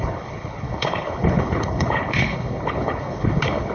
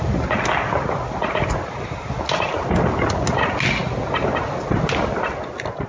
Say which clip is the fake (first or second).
first